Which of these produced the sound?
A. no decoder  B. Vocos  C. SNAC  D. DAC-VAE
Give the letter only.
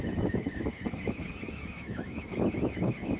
D